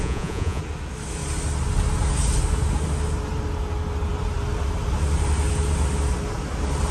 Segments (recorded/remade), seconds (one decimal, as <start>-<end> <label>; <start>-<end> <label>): 0.0-0.6 remade; 0.6-6.9 recorded